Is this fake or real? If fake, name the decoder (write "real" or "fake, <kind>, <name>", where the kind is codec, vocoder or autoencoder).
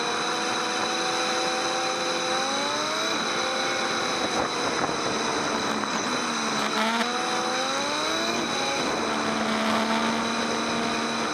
real